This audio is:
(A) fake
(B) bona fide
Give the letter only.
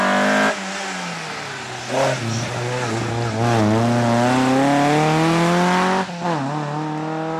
B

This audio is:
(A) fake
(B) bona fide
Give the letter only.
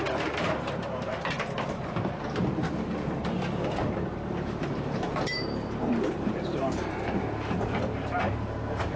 A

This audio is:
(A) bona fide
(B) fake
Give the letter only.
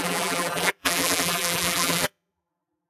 B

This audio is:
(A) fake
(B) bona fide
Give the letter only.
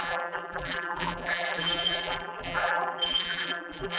A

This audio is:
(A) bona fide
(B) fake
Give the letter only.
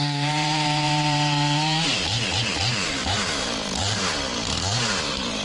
B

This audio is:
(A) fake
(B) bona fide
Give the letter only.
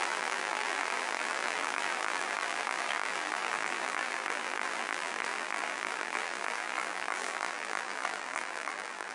A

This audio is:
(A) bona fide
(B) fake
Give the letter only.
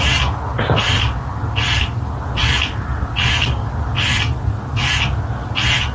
A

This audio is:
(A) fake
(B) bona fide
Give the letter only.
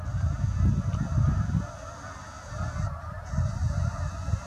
B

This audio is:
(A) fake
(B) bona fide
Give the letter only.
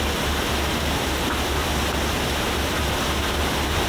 B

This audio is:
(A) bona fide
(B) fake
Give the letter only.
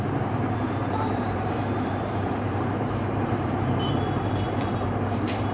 B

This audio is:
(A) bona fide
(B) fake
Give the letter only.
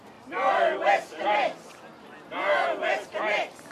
A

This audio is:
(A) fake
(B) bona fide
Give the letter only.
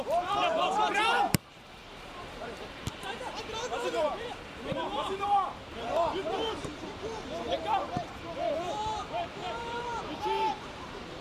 A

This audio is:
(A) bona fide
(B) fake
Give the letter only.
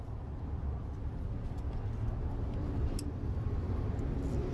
A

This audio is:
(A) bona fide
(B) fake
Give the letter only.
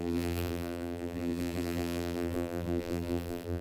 B